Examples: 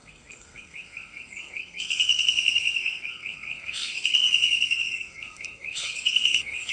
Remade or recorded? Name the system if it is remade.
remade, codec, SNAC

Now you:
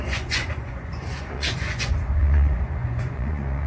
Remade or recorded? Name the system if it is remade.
remade, vocoder, Vocos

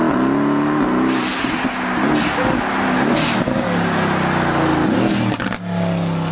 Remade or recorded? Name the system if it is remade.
recorded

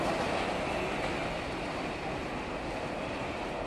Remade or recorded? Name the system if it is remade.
recorded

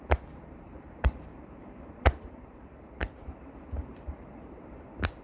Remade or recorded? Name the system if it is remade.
remade, vocoder, BigVGAN v2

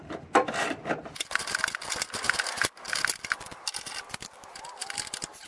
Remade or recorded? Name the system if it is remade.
recorded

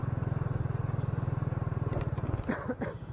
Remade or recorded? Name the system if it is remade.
recorded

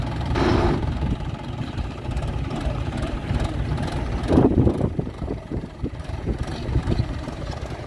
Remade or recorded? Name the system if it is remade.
remade, vocoder, BigVGAN v2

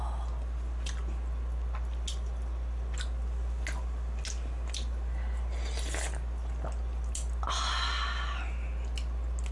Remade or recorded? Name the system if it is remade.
recorded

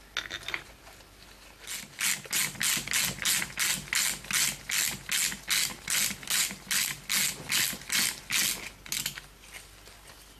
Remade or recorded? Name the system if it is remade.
recorded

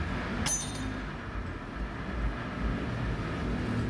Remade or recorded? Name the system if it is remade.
recorded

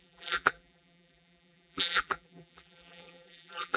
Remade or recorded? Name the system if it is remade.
remade, vocoder, BigVGAN v2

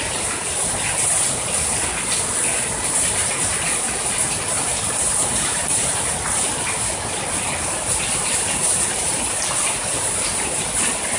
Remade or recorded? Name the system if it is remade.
recorded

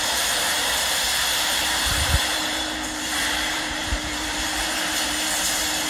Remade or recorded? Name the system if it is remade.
remade, vocoder, BigVGAN v2